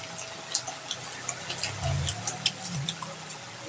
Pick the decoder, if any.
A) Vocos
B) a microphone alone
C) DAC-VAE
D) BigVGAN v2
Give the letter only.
B